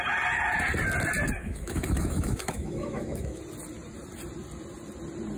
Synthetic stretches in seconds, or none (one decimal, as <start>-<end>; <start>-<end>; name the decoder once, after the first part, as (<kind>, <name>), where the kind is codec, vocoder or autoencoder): 1.4-3.4 (autoencoder, DAC-VAE)